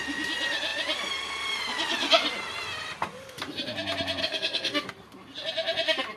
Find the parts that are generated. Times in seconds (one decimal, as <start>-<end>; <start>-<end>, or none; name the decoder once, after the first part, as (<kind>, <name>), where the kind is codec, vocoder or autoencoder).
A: 4.2-4.9 (codec, SNAC)